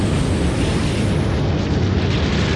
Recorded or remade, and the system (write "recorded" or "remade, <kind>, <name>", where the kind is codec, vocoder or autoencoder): recorded